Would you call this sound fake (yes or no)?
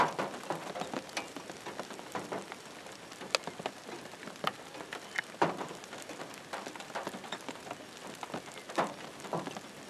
no